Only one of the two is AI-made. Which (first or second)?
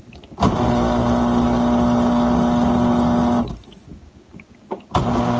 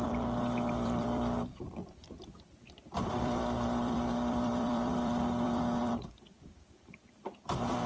second